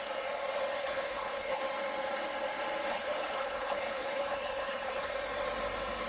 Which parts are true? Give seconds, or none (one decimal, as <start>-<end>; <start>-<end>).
0.0-0.8; 1.6-2.9; 5.1-6.1